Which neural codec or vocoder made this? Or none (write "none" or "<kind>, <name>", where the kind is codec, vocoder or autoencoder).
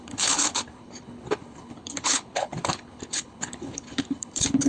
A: codec, HILCodec